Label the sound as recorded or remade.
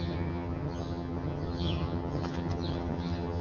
remade